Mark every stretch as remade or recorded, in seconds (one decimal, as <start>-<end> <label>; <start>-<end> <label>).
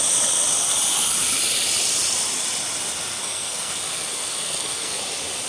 0.0-3.2 recorded; 3.2-5.0 remade; 5.0-5.5 recorded